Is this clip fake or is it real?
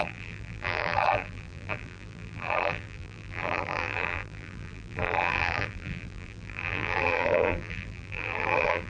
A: fake